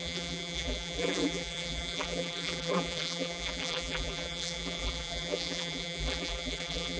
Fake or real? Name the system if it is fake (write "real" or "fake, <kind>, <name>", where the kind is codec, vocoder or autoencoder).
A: fake, vocoder, BigVGAN v2